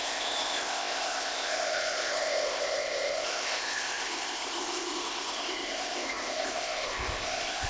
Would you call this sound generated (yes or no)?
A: yes